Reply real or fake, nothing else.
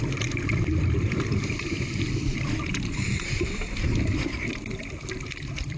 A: fake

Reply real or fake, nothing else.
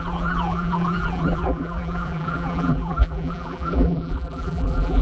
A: fake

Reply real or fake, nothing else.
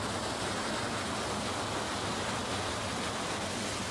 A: real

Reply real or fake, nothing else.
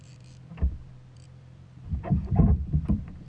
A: fake